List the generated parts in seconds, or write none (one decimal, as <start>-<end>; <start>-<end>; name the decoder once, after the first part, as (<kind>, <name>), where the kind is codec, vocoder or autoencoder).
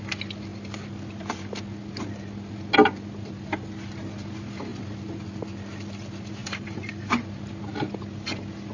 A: 6.4-7.1 (vocoder, BigVGAN v2)